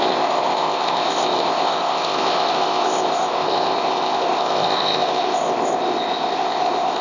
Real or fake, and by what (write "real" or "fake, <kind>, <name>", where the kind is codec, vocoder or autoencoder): fake, codec, ZipCodec